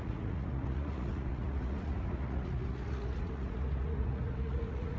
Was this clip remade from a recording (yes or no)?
yes